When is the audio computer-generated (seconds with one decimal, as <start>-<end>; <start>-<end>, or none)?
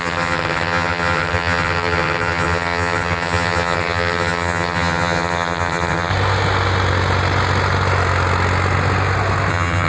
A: 0.0-6.1; 9.5-9.9